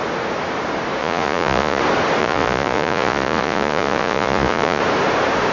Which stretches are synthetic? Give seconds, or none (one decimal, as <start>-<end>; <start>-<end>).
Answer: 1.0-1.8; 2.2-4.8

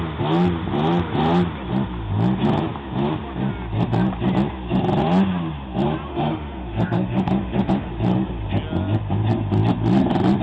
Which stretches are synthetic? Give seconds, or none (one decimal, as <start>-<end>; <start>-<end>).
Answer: 6.1-7.9

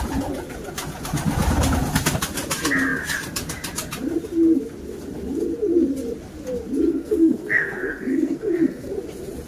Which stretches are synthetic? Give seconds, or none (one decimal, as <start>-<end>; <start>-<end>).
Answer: 6.9-8.9

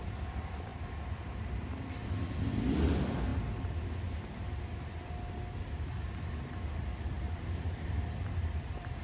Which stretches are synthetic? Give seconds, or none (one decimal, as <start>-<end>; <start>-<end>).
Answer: 0.0-3.3; 7.0-9.0